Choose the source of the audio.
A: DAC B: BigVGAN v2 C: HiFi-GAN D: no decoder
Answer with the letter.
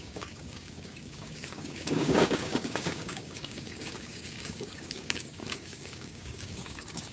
A